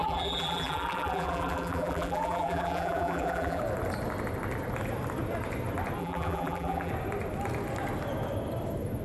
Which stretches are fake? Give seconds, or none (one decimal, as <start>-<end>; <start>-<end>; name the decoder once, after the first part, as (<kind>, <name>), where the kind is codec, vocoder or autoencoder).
0.0-3.6 (vocoder, BigVGAN v2); 6.0-6.9